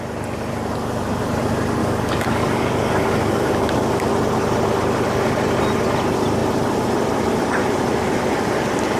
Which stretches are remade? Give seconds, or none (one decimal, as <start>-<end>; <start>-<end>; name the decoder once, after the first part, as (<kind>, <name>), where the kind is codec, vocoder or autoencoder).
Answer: 1.8-4.1 (codec, DAC)